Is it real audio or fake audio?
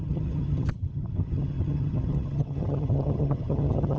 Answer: fake